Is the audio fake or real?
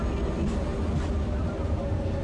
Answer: real